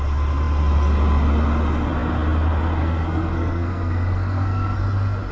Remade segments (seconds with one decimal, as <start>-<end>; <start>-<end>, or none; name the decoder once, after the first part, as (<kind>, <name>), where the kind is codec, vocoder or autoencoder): 2.8-4.8 (codec, SNAC)